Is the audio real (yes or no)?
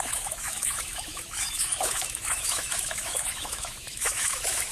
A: no